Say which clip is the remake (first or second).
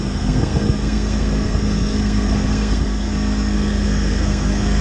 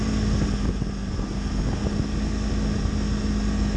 first